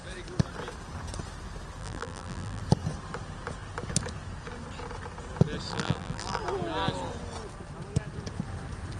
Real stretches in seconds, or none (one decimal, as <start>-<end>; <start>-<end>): 0.0-1.8; 2.6-5.7; 6.4-9.0